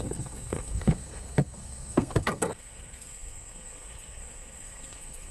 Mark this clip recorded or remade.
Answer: remade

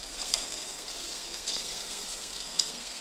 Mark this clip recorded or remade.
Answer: remade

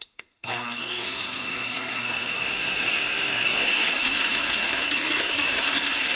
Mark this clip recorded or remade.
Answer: remade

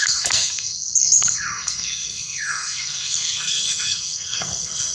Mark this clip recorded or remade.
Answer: remade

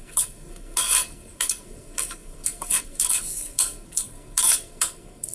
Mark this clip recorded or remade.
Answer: remade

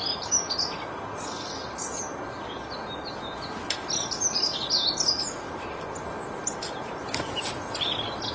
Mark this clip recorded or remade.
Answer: recorded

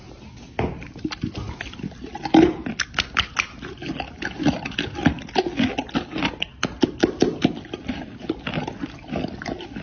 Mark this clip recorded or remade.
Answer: recorded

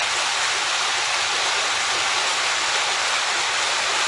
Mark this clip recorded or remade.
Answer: recorded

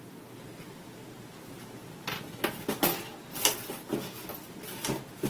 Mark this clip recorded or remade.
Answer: recorded